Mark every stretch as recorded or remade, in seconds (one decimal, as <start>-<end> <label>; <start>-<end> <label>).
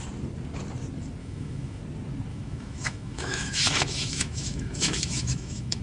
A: 0.0-1.2 recorded; 1.2-1.8 remade; 1.8-2.3 recorded; 2.3-5.8 remade